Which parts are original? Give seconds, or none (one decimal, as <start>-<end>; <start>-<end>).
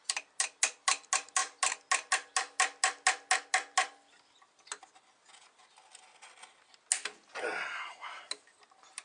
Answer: 0.0-9.0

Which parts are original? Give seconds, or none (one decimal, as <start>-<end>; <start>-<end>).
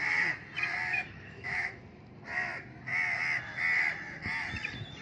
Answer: 0.0-0.9; 1.8-5.0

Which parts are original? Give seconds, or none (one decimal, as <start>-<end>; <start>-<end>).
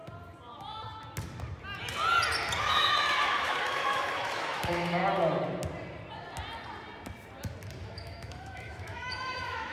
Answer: 0.0-2.6; 5.0-7.8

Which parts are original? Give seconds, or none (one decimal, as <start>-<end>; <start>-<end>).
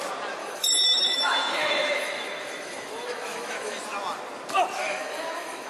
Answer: 0.0-0.4; 3.8-4.8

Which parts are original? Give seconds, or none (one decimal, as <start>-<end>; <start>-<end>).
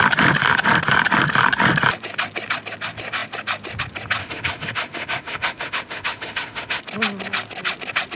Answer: 0.0-4.2; 6.8-8.1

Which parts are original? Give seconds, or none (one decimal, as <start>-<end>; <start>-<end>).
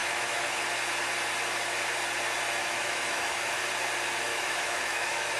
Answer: 0.6-2.6; 3.6-4.3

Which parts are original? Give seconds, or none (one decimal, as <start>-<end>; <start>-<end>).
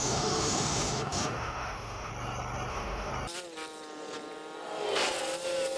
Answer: 2.1-2.7; 3.1-5.8